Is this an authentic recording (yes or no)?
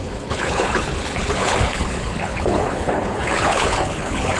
no